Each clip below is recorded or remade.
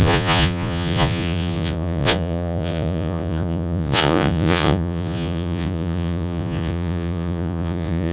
remade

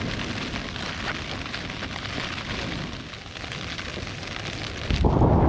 recorded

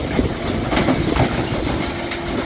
recorded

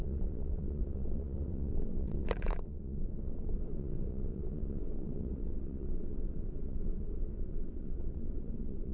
remade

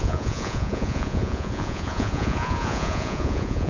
remade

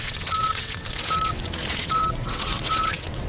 remade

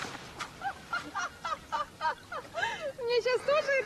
recorded